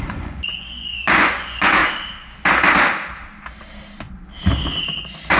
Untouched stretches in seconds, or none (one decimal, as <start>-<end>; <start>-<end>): 1.8-5.0

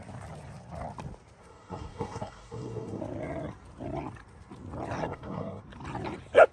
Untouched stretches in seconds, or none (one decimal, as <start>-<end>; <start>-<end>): 0.0-1.4; 3.0-5.0; 5.6-6.5